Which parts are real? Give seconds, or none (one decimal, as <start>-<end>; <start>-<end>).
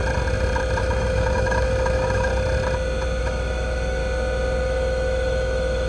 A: 0.0-0.8; 2.3-3.2; 4.0-4.6